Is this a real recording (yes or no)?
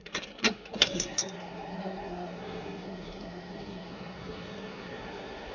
no